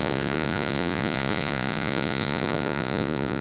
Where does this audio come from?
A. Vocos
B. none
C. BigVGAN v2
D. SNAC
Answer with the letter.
A